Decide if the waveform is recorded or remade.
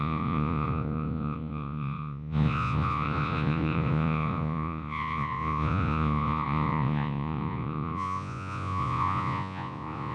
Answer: remade